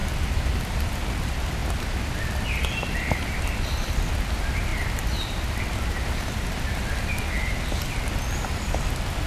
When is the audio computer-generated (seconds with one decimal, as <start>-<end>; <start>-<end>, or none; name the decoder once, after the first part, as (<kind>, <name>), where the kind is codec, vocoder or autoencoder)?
none